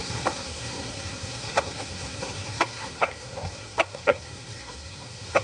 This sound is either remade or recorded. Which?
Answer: remade